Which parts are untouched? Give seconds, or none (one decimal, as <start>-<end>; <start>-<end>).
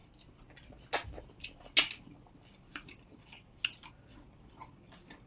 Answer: 0.0-5.3